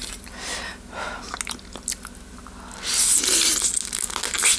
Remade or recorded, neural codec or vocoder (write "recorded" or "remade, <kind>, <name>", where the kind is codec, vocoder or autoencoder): recorded